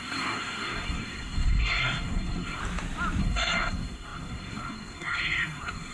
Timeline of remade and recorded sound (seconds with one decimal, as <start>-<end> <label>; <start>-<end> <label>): 0.0-2.6 remade; 2.6-3.2 recorded; 3.2-5.9 remade

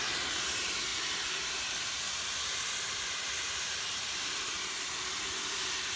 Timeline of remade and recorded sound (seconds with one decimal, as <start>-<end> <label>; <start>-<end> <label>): 0.0-6.0 recorded